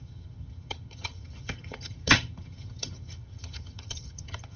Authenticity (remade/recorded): remade